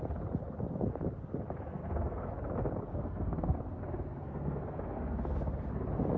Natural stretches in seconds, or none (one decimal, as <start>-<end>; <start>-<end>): 0.0-1.7; 2.3-2.9; 5.7-6.2